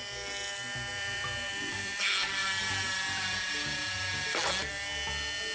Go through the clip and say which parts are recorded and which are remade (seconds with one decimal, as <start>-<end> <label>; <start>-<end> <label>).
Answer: 0.0-0.9 recorded; 0.9-2.0 remade; 2.0-5.5 recorded